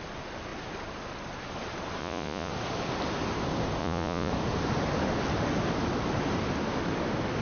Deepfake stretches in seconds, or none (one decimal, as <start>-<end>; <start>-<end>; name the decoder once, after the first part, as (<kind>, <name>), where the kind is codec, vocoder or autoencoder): 2.0-2.5 (vocoder, Vocos); 3.8-4.3